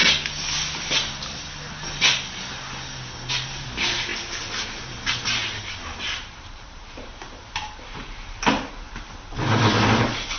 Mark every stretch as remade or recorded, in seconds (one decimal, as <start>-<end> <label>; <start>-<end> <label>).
0.0-3.3 recorded; 3.3-4.1 remade; 4.1-4.8 recorded; 4.8-10.4 remade